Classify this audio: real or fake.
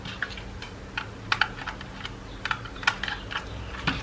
real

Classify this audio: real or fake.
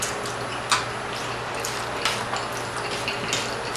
real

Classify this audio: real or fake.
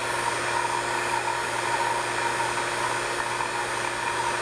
real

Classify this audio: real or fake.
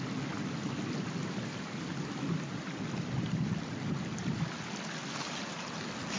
real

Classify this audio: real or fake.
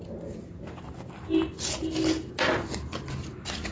real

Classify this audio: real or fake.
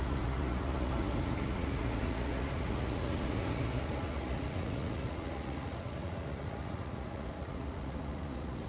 fake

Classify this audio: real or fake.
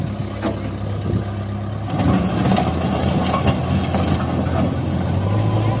real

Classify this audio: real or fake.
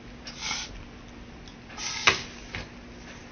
real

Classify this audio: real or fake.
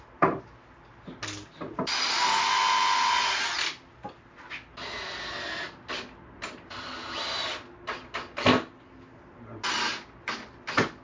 real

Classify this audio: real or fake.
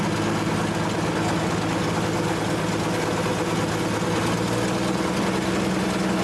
real